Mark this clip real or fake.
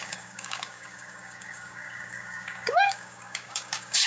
fake